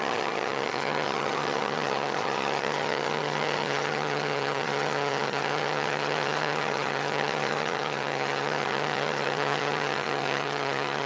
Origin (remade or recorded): remade